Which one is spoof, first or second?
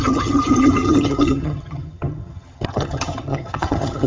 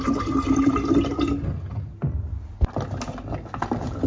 first